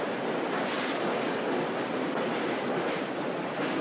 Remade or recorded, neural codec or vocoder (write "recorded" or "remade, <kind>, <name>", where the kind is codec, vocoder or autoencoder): recorded